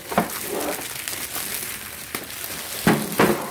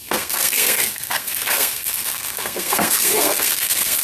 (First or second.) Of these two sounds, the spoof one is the second